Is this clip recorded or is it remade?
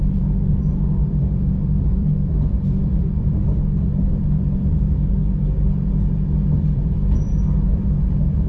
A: remade